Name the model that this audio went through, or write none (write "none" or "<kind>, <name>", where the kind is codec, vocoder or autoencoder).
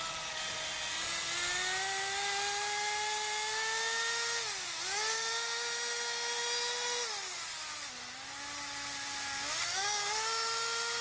none